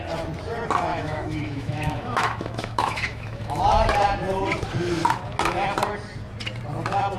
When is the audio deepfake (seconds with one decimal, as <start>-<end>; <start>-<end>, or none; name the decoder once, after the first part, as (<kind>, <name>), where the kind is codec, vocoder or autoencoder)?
0.9-3.6 (autoencoder, DAC-VAE)